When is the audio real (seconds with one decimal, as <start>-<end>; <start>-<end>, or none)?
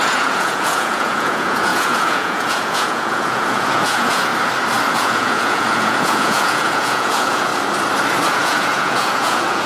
4.3-4.9; 7.5-8.3